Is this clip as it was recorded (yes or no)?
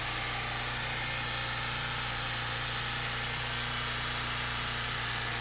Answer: yes